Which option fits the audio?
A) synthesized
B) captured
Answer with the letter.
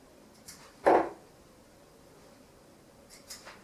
B